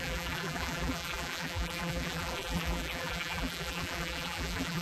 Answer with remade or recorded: remade